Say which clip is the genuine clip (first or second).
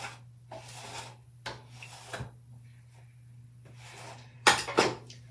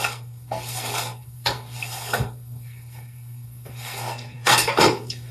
first